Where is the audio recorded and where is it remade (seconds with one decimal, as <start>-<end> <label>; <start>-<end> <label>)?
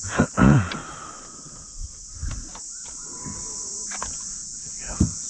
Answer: 0.0-0.8 remade; 0.8-4.0 recorded; 4.0-5.3 remade